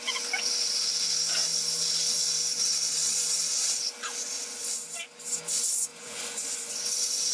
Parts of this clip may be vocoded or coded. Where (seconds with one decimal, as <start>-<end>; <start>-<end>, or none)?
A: 5.9-6.7